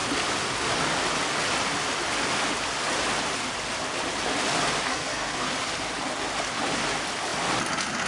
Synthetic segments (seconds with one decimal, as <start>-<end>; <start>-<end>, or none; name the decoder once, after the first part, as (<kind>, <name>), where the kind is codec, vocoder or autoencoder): 4.9-5.5 (codec, SNAC)